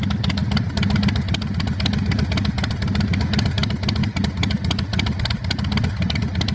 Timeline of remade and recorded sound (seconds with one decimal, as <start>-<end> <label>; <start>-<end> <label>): 0.0-6.5 recorded